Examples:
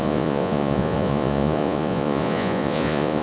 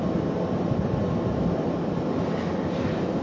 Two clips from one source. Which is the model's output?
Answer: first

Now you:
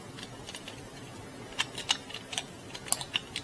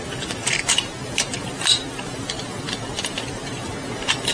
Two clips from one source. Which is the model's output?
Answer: second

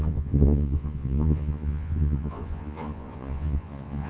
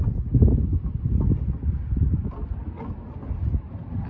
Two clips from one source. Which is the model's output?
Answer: first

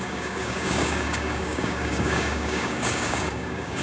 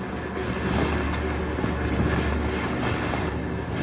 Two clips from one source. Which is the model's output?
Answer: first